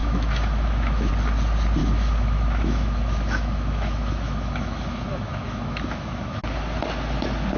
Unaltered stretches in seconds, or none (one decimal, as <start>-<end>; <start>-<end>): 1.1-1.8; 6.4-7.6